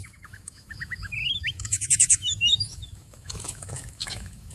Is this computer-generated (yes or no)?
yes